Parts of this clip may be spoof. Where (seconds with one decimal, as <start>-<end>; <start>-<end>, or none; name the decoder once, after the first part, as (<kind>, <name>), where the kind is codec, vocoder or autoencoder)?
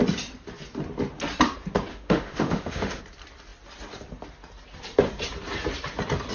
1.9-3.0 (autoencoder, DAC-VAE)